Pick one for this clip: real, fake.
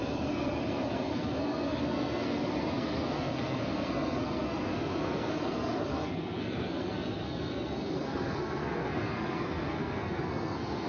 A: fake